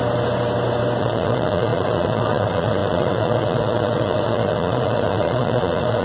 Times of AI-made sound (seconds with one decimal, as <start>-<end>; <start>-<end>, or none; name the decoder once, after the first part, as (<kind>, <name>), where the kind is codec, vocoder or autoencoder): 1.0-6.0 (vocoder, Vocos)